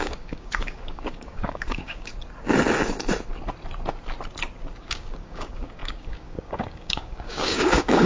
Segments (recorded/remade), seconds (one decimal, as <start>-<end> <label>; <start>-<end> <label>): 0.0-2.1 remade; 2.1-4.8 recorded; 4.8-8.1 remade